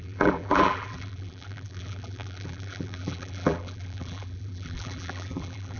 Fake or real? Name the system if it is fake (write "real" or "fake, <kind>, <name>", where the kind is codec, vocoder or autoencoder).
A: fake, vocoder, BigVGAN v2